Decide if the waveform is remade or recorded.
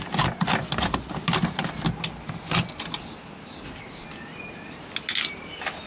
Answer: recorded